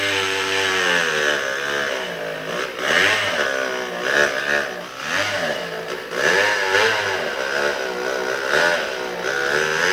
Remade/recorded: recorded